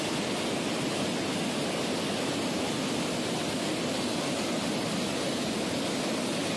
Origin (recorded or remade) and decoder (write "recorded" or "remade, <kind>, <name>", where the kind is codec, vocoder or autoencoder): recorded